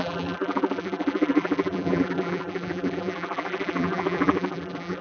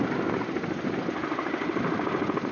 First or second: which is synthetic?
first